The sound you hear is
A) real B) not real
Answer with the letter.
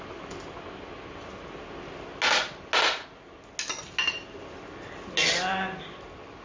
A